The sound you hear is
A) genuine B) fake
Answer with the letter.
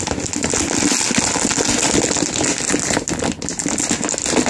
A